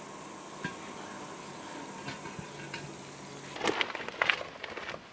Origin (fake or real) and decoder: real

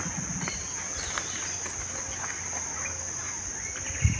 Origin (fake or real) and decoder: real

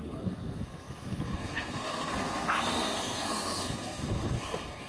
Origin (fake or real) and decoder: fake, codec, SNAC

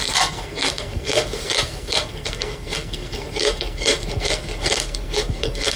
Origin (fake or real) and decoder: fake, codec, SNAC